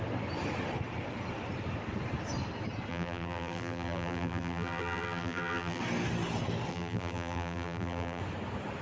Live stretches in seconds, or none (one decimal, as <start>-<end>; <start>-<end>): 0.0-2.9; 5.8-6.7; 8.2-8.8